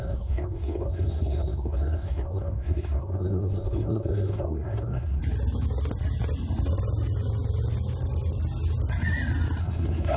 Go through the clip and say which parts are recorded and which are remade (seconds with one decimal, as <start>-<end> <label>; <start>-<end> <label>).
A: 0.0-5.2 remade; 5.2-9.6 recorded; 9.6-10.2 remade